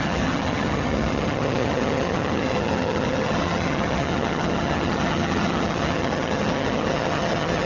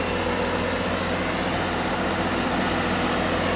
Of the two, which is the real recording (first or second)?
second